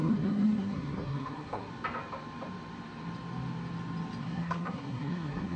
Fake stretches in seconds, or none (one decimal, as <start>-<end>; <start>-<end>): 0.0-1.7; 4.2-5.6